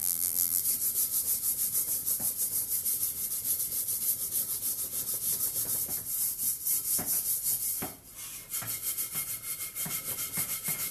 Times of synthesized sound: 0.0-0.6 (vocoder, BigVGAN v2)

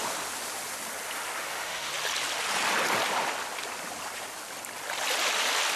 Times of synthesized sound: 1.4-1.9 (autoencoder, DAC-VAE)

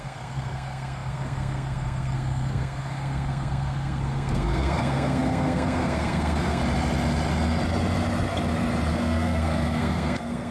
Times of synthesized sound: 0.0-6.6 (codec, SNAC); 8.9-10.5

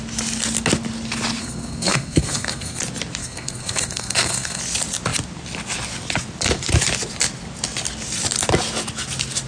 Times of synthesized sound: 1.4-2.8 (codec, SNAC); 3.2-4.6